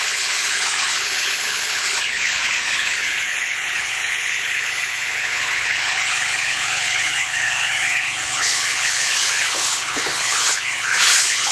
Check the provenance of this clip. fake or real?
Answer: fake